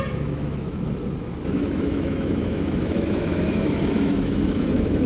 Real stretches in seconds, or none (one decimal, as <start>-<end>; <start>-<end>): 1.0-1.5